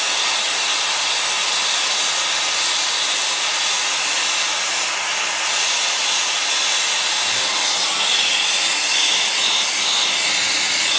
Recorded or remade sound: recorded